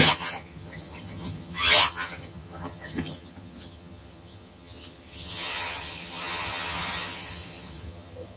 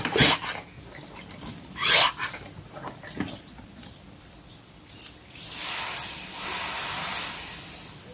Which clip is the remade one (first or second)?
first